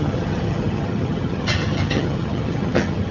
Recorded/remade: remade